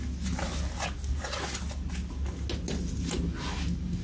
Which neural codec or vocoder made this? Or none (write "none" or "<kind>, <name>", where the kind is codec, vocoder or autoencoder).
none